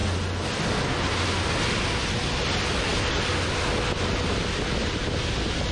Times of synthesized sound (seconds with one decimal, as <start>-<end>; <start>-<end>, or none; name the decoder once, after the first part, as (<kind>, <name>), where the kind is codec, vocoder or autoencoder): none

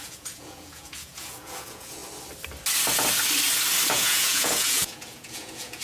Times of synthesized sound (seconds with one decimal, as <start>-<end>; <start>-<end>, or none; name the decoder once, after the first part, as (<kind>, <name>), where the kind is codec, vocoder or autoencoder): 0.0-2.0 (vocoder, Vocos); 3.9-5.8

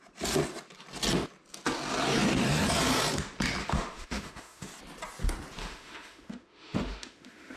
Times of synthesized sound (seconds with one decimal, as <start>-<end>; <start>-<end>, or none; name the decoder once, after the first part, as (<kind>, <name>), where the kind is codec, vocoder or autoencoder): 3.6-4.7 (autoencoder, DAC-VAE); 5.6-7.6

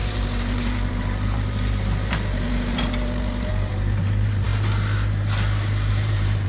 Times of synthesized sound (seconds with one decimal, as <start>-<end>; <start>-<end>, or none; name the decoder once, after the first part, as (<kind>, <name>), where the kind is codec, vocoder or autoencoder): 0.0-4.5 (vocoder, BigVGAN v2); 5.9-6.5